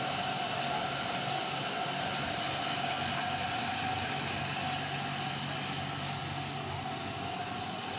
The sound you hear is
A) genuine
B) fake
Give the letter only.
A